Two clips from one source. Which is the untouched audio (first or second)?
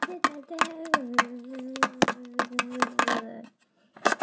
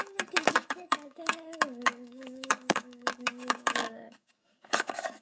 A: first